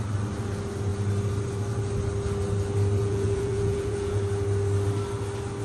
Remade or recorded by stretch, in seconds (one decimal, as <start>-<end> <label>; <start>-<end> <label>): 0.0-3.0 recorded; 3.0-4.2 remade; 4.2-5.6 recorded